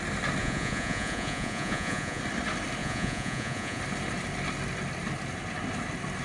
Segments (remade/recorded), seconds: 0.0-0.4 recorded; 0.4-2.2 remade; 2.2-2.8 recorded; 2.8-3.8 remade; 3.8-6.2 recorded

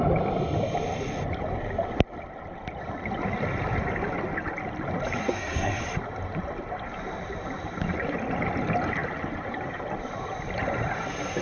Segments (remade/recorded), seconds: 0.0-5.2 recorded; 5.2-5.8 remade; 5.8-11.4 recorded

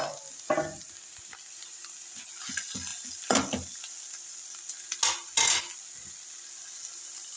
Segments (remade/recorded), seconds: 0.0-7.4 recorded

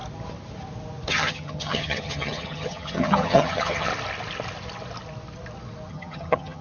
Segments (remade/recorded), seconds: 0.0-1.1 recorded; 1.1-3.9 remade; 3.9-5.9 recorded; 5.9-6.6 remade

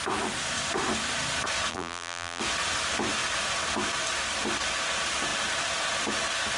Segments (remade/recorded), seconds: 0.0-1.7 recorded; 1.7-2.4 remade; 2.4-6.6 recorded

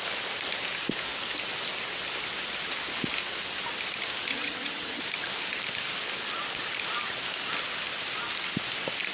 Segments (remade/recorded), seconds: 0.0-4.3 recorded; 4.3-5.0 remade; 5.0-9.1 recorded